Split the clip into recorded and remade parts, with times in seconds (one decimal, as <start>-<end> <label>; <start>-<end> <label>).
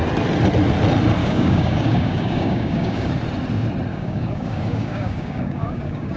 0.0-1.2 recorded; 1.2-3.1 remade; 3.1-3.9 recorded; 3.9-6.2 remade